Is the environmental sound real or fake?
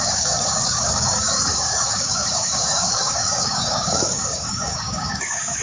fake